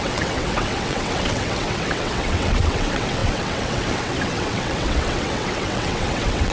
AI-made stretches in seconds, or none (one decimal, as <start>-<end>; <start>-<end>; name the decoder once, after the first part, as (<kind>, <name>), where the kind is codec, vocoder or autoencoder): 0.0-6.5 (vocoder, WaveNeXt)